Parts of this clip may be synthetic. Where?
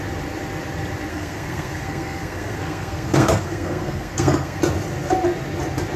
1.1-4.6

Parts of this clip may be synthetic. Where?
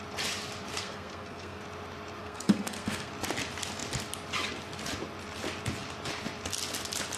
0.7-1.6; 2.2-3.1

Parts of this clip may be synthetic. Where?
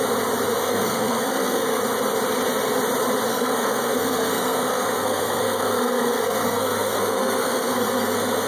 0.6-1.8; 3.3-8.5